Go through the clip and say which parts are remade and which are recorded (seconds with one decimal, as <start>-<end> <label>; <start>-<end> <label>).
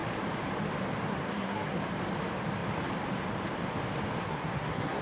0.0-1.1 recorded; 1.1-1.8 remade; 1.8-4.2 recorded; 4.2-5.0 remade